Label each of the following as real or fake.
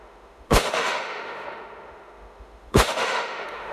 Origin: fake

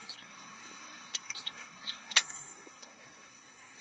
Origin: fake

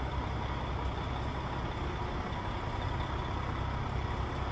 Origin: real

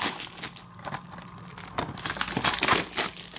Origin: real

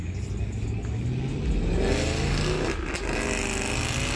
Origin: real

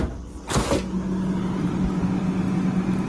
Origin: real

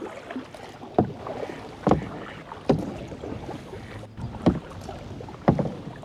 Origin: real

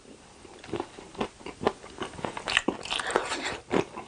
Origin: fake